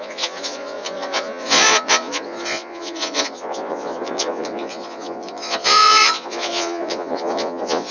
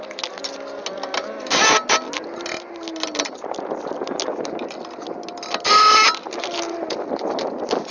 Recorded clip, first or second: second